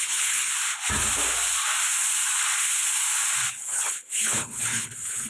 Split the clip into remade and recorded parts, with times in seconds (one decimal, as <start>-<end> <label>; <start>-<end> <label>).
0.0-0.5 remade; 0.5-3.5 recorded; 3.5-5.3 remade